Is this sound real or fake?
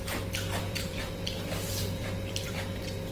fake